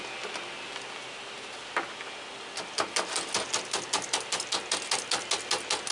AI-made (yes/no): no